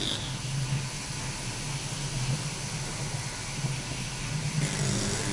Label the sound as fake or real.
real